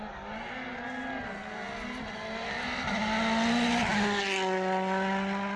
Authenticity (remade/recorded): recorded